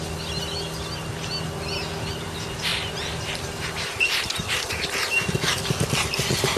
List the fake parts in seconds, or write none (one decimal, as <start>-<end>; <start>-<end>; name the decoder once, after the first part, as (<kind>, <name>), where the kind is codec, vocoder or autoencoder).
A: 2.7-4.0 (vocoder, BigVGAN v2)